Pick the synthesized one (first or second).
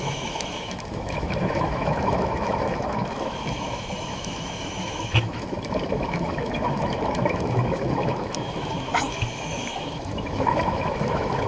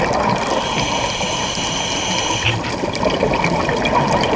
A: first